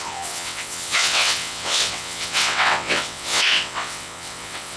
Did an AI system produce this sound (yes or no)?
yes